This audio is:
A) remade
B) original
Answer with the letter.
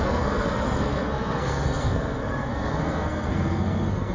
A